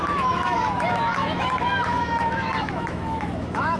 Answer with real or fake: fake